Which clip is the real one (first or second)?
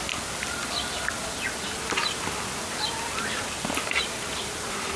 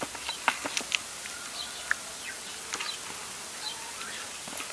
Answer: second